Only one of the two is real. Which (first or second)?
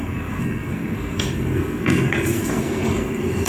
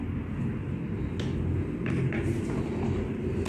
second